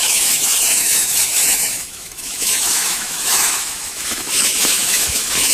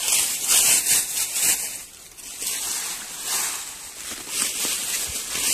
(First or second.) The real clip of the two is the second